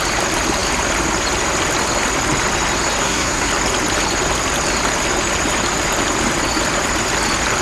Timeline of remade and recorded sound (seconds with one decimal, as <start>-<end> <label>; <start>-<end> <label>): 0.0-3.0 recorded; 3.0-3.5 remade; 3.5-7.6 recorded